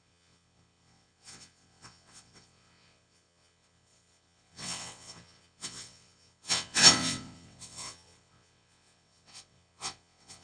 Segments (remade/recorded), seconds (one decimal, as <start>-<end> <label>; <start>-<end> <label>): 0.0-10.4 remade